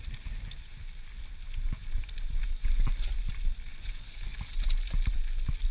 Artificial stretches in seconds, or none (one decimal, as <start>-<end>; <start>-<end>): 3.7-4.2